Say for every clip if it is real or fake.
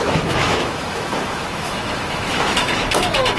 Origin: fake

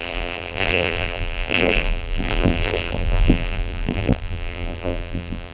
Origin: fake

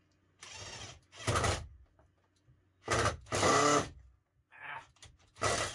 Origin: real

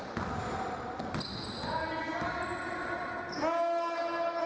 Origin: real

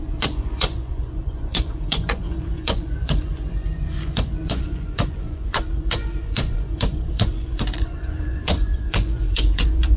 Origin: fake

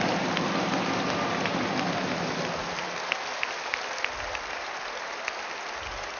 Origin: real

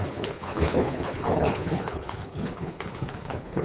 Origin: fake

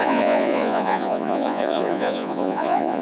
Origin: fake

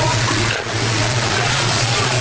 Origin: fake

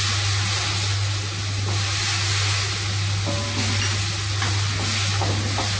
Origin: real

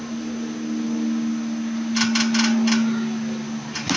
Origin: real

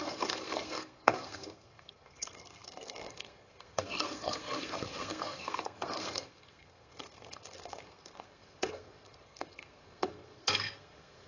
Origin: fake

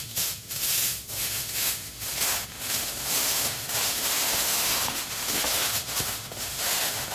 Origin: fake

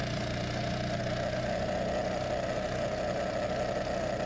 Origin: real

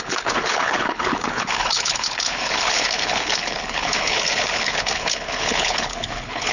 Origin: fake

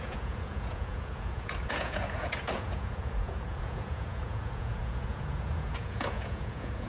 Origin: fake